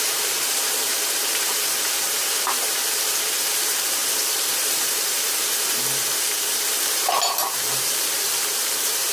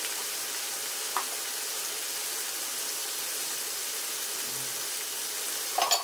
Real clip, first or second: second